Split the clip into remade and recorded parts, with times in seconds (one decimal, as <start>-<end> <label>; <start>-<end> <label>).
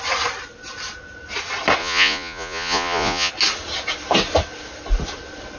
0.0-1.8 recorded; 1.8-3.3 remade; 3.3-5.6 recorded